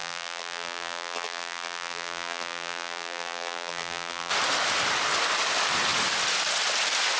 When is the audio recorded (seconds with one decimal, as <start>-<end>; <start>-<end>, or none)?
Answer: 4.3-7.2